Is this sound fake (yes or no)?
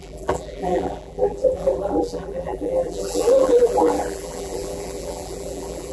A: yes